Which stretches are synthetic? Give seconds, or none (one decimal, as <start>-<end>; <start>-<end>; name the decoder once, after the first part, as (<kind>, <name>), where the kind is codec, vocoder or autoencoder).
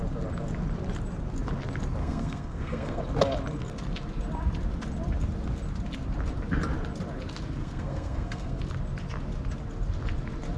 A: 2.0-3.0 (codec, SNAC); 7.6-8.6